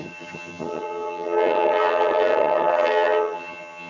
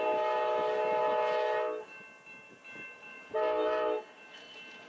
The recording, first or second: second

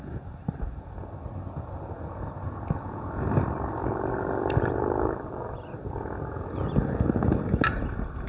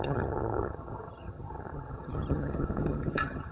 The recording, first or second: first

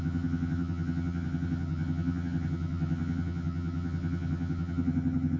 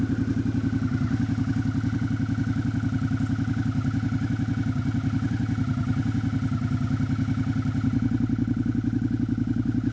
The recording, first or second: second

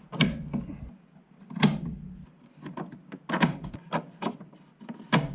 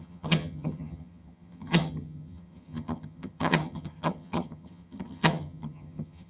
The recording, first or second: first